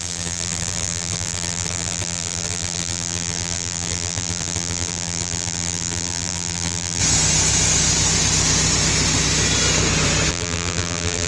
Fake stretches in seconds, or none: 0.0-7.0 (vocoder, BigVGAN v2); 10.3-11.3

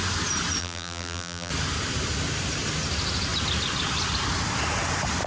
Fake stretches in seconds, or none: 0.6-1.5 (vocoder, BigVGAN v2)

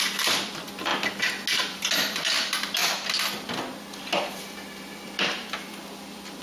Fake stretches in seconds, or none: 0.0-0.9 (vocoder, BigVGAN v2); 1.6-6.4

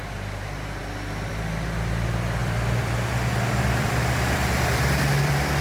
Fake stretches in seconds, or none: 2.4-5.6 (vocoder, BigVGAN v2)

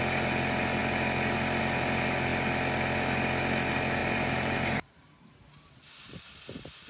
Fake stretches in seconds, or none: 4.0-5.5 (vocoder, BigVGAN v2)